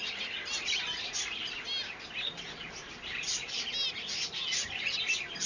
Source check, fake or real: real